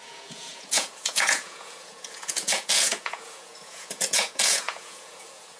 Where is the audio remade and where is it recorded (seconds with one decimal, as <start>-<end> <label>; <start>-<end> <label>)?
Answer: 0.0-5.6 remade